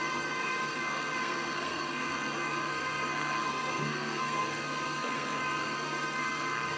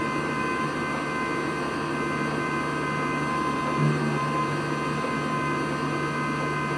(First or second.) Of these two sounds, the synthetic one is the first